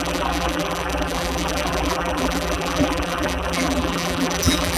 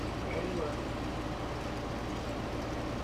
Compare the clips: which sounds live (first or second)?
second